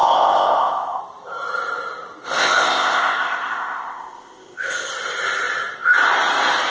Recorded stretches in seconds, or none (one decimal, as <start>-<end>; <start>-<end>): 1.0-2.4; 4.9-6.7

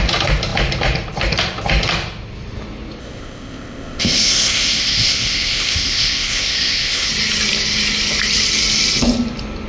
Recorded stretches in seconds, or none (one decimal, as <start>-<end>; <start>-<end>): 0.0-3.0; 7.1-9.7

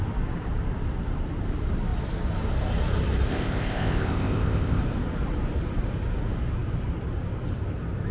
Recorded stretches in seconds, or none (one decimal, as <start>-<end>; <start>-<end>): 0.0-3.3; 4.8-8.1

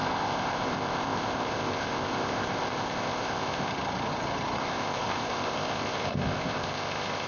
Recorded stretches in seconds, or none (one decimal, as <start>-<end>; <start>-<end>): 3.7-4.6

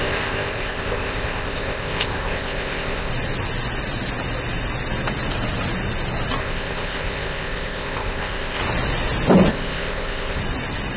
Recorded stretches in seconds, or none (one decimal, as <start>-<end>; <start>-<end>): 3.1-6.4; 8.6-9.5; 10.4-11.0

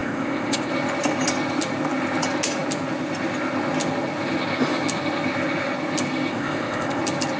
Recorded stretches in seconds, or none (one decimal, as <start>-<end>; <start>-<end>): 0.7-6.3; 7.0-7.4

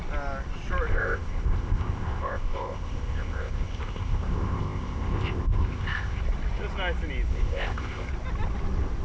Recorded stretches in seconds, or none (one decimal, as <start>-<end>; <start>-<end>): 0.0-0.9; 6.2-7.3; 8.1-9.0

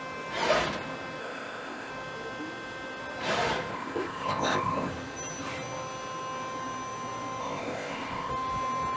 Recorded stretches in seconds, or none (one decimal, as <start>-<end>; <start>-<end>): 0.0-1.2; 1.9-3.7; 4.9-7.4; 8.3-9.0